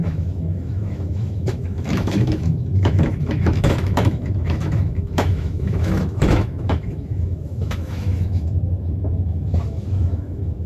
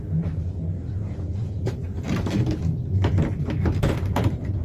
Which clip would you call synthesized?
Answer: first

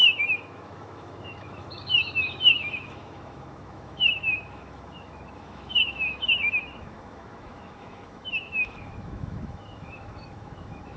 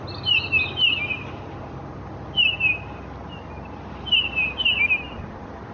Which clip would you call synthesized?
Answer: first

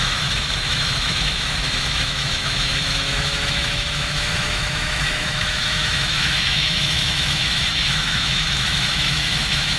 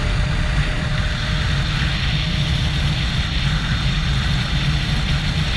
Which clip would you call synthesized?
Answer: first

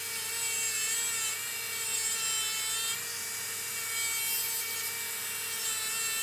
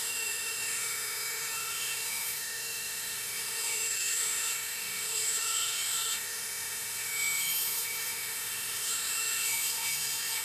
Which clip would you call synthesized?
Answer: second